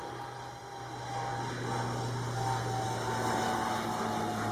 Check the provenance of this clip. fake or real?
real